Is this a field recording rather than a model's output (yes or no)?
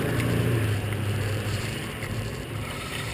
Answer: no